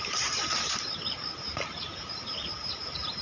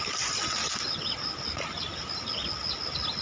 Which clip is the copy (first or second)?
first